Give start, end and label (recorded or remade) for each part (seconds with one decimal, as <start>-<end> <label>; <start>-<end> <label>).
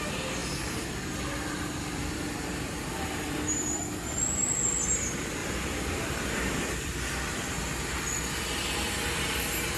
0.0-2.0 recorded; 2.0-4.7 remade; 4.7-5.4 recorded; 5.4-6.9 remade; 6.9-9.8 recorded